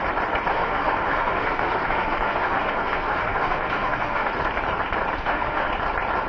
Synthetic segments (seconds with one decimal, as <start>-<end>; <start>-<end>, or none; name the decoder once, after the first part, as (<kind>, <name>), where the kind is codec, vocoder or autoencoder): 0.5-4.3 (autoencoder, DAC-VAE); 5.2-5.7